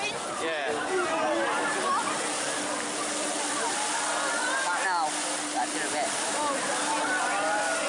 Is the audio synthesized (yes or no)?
no